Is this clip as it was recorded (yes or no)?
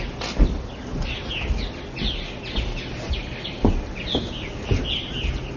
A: yes